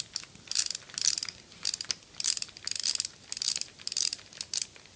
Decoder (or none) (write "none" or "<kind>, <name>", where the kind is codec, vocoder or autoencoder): none